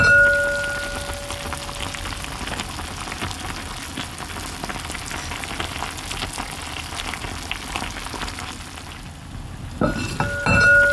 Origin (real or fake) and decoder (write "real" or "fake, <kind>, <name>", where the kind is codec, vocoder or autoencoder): real